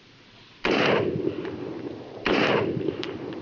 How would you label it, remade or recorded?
remade